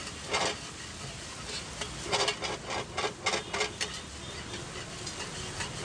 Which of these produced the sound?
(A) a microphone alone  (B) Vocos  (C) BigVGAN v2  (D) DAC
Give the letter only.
A